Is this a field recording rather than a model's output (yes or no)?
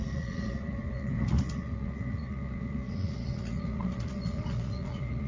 no